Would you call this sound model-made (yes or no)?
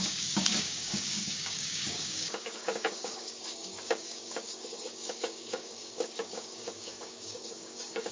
yes